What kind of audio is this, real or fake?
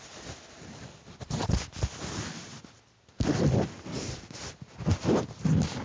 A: real